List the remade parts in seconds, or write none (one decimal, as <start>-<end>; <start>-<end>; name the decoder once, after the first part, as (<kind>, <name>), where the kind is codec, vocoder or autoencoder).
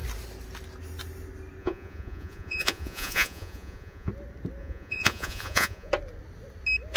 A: 1.6-4.1 (vocoder, Vocos); 4.6-5.9